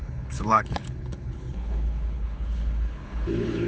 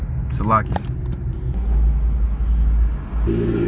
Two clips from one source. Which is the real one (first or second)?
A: second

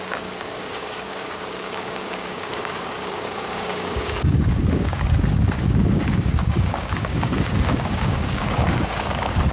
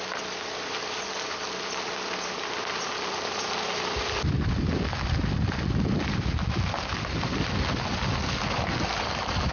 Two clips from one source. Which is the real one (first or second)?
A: second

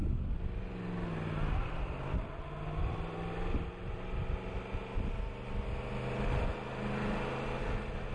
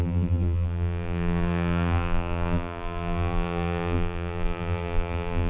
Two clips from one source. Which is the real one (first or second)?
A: first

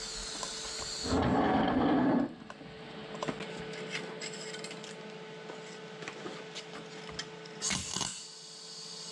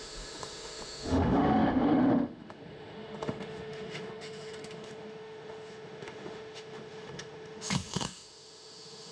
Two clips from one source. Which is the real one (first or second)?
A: first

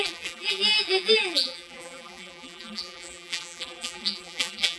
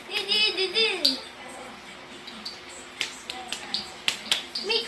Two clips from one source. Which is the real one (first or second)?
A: second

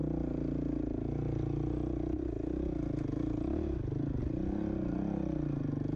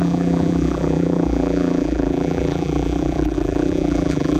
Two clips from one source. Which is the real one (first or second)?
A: first